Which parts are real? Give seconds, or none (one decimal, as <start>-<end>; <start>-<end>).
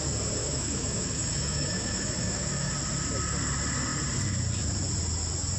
0.0-0.4; 2.7-5.6